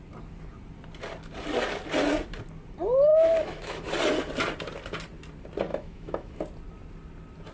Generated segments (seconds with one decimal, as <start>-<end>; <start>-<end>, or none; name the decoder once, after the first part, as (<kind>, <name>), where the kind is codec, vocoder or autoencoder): 3.1-3.9 (autoencoder, DAC-VAE); 5.7-6.4